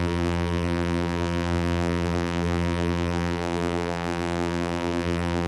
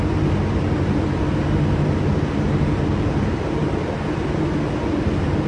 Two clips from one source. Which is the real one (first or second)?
second